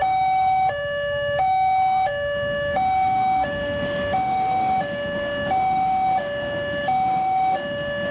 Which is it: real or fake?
fake